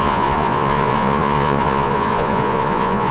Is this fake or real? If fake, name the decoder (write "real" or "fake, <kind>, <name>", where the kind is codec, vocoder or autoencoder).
fake, vocoder, Vocos